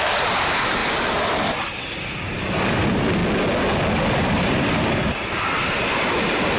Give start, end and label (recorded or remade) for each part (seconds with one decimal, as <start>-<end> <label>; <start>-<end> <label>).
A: 0.0-0.8 remade; 0.8-1.6 recorded; 1.6-3.2 remade; 3.2-3.9 recorded; 3.9-6.6 remade